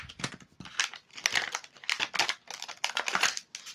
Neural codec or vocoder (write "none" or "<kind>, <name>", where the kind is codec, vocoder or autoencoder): none